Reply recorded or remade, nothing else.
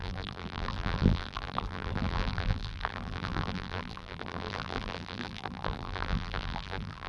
remade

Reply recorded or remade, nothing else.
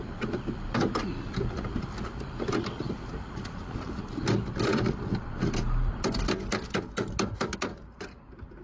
recorded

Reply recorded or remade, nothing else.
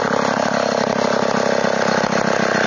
recorded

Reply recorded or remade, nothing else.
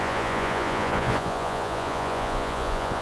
remade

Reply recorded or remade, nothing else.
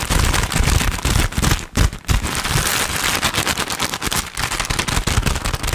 recorded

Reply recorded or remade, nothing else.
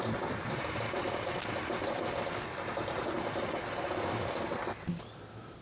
recorded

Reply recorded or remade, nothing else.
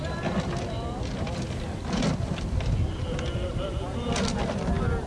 recorded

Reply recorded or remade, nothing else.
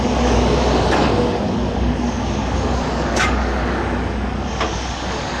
remade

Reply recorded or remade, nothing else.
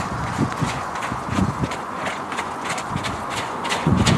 remade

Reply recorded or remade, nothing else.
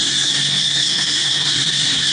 remade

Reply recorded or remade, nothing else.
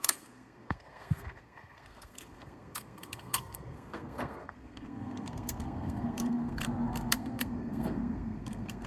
remade